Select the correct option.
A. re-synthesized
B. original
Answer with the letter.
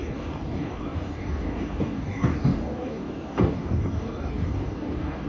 A